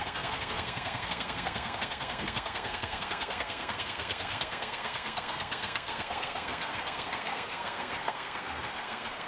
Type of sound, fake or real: fake